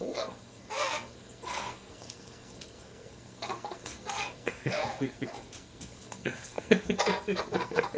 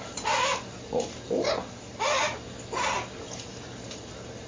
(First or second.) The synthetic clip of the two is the first